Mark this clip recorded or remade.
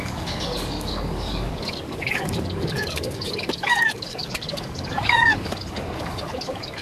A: remade